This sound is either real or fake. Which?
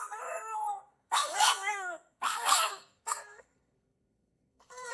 fake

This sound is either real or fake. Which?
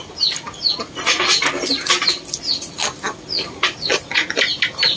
real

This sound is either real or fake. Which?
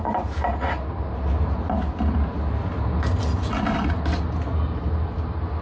real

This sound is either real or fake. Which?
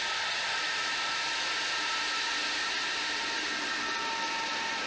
real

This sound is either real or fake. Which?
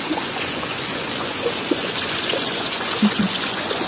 fake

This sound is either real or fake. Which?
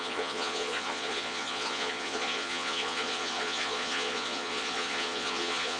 fake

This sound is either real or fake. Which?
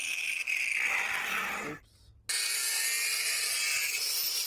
real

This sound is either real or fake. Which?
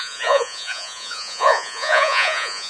fake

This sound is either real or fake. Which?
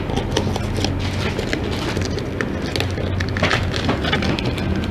real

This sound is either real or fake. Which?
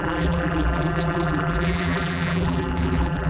fake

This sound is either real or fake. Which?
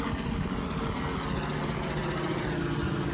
real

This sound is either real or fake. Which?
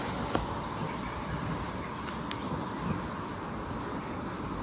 real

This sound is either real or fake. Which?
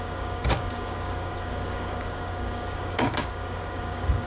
fake